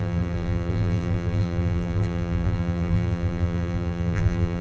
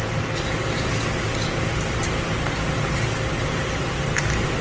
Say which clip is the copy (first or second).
first